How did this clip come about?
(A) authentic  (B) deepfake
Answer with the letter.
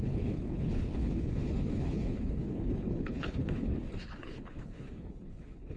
B